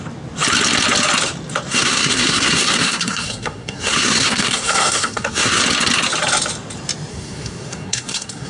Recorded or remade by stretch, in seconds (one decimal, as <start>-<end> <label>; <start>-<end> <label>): 0.0-1.7 recorded; 1.7-5.6 remade; 5.6-7.1 recorded; 7.1-8.5 remade